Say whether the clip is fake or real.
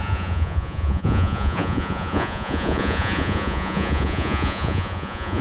fake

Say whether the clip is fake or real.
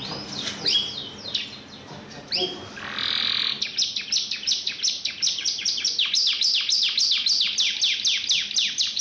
real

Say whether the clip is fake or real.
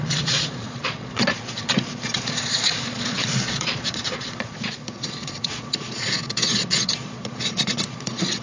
fake